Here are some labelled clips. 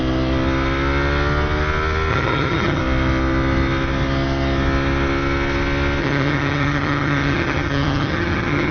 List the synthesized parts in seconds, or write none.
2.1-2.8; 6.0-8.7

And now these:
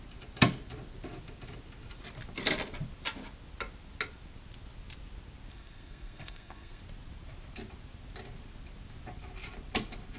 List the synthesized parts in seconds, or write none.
5.5-6.8

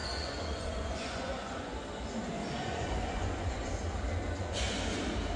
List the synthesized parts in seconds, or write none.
0.0-1.8; 2.3-3.8; 4.4-5.0